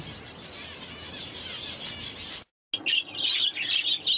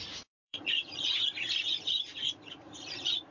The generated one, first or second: second